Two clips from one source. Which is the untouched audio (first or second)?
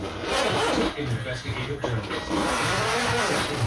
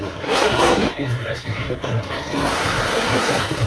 first